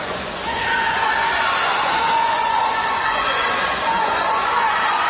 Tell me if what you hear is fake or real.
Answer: fake